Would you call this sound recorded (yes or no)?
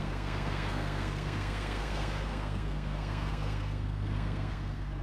no